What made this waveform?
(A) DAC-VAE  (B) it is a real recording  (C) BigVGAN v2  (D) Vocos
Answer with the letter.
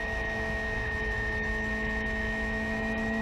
A